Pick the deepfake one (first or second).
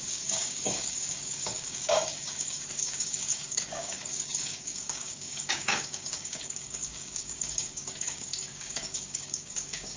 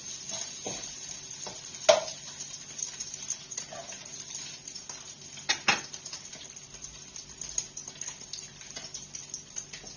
first